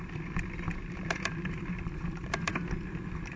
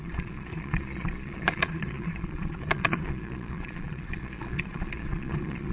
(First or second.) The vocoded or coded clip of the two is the second